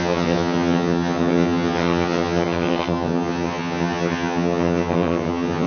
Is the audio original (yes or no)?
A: no